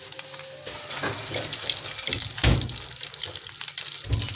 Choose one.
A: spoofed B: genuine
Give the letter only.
B